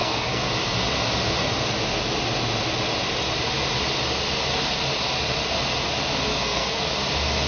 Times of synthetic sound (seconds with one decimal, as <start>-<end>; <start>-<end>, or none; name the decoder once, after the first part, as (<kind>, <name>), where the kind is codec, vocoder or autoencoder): 0.0-0.5 (codec, SNAC); 6.3-6.9